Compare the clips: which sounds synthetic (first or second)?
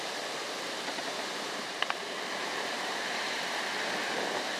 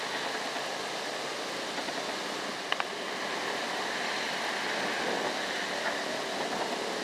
first